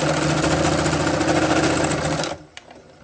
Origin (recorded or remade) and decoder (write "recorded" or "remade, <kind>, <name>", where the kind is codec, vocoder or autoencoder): recorded